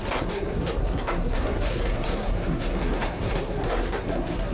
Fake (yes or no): yes